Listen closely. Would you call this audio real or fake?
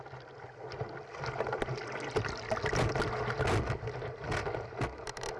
real